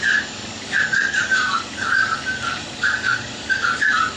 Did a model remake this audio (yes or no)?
yes